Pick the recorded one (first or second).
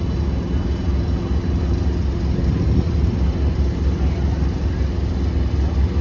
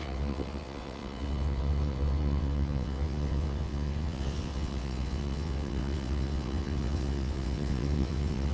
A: first